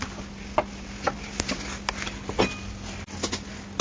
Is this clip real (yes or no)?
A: yes